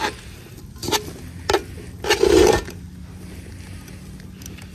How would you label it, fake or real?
real